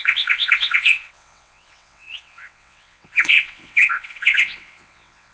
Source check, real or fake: fake